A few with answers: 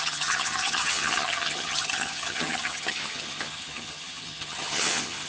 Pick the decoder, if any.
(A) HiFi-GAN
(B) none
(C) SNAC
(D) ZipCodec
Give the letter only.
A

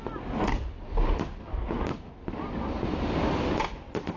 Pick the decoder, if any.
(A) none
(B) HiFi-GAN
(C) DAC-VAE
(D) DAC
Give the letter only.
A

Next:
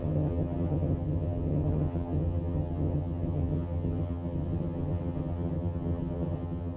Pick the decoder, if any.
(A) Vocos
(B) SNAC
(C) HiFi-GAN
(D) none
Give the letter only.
C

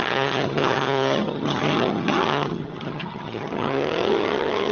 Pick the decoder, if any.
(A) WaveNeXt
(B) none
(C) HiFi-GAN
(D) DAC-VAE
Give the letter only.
C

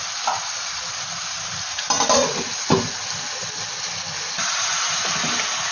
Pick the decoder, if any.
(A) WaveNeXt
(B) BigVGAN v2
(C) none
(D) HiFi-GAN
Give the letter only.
C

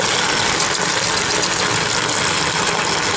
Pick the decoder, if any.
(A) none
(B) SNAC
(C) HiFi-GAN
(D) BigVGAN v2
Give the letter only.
A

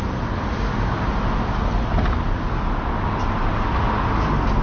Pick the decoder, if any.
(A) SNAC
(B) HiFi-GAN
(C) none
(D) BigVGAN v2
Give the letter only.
C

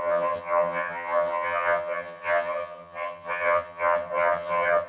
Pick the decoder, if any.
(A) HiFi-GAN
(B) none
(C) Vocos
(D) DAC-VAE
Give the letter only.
A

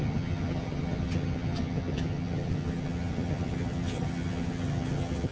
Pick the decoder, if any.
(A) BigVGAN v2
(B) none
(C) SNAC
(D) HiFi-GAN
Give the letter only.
D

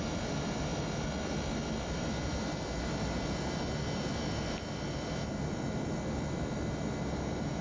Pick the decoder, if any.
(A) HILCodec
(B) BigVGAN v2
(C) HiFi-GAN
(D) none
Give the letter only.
D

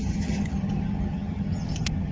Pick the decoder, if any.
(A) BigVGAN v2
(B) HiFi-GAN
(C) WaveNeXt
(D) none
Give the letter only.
B